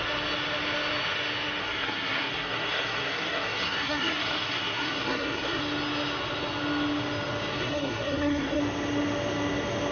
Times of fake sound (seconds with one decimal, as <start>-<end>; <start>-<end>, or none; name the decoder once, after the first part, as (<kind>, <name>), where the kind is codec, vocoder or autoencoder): 1.6-5.6 (codec, SNAC); 7.6-8.6